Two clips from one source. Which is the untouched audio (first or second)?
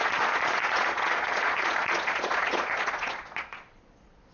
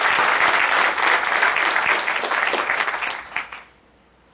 second